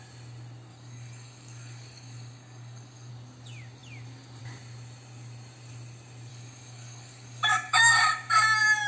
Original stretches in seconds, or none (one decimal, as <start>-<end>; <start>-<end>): 0.0-0.7; 3.1-6.3; 8.0-8.9